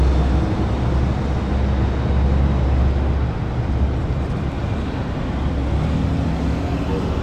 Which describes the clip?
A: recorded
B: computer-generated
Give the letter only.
A